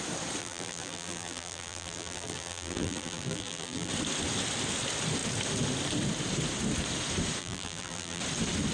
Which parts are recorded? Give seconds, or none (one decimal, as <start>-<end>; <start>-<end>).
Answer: 0.0-0.4; 3.9-7.4; 8.2-8.7